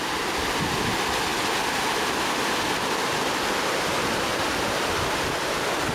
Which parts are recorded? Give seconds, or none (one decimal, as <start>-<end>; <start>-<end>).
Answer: 0.0-4.3; 4.9-5.9